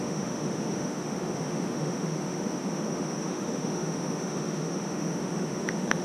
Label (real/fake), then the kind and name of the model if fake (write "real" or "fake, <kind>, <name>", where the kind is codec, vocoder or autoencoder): fake, autoencoder, DAC-VAE